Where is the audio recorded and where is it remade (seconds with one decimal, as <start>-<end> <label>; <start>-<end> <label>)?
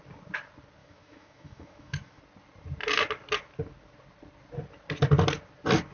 0.0-0.8 recorded; 0.8-2.2 remade; 2.2-5.9 recorded